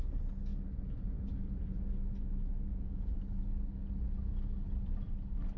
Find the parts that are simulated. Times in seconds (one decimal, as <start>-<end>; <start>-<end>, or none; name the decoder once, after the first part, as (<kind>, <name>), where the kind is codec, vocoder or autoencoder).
0.5-1.8 (vocoder, Vocos); 2.7-3.2